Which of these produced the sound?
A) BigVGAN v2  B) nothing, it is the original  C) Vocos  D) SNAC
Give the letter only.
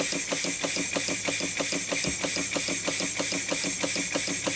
B